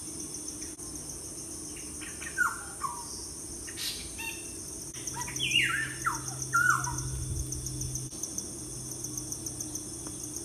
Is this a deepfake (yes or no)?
no